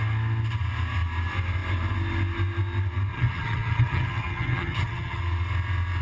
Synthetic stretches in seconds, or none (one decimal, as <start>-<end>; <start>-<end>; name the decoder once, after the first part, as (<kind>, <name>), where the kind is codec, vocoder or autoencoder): 3.1-5.2 (vocoder, HiFi-GAN)